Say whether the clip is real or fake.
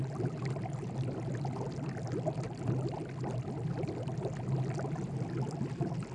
real